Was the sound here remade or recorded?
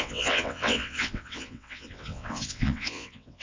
remade